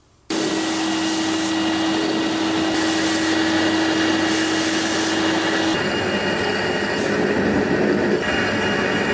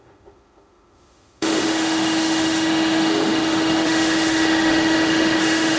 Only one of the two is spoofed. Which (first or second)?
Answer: second